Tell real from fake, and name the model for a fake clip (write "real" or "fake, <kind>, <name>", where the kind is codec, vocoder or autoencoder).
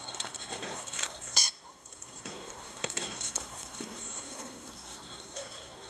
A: fake, codec, SNAC